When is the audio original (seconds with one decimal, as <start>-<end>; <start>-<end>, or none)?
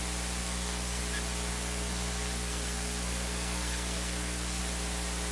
0.0-0.4; 1.0-1.5; 4.6-5.3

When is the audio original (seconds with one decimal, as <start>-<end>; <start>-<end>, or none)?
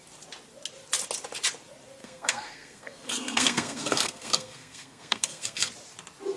0.0-2.0; 5.7-6.4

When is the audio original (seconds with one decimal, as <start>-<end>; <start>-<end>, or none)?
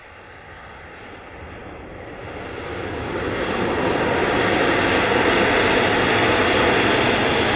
0.0-7.6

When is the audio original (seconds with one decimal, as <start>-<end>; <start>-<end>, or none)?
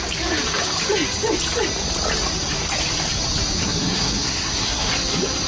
0.0-3.6; 4.9-5.5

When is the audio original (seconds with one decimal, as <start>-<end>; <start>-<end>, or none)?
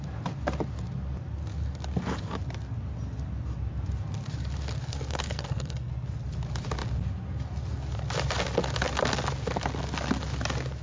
0.0-4.9; 5.9-10.8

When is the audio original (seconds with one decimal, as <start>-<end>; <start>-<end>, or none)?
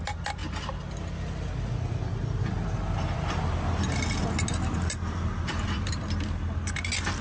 0.0-7.2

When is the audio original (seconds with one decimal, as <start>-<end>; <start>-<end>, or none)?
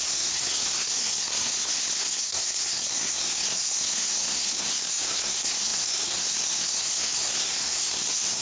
none